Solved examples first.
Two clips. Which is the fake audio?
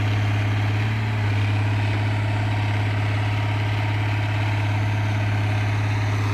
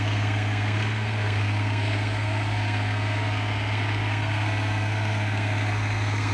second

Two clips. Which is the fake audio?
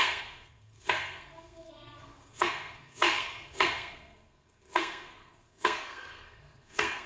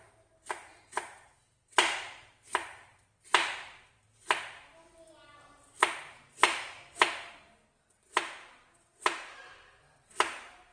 first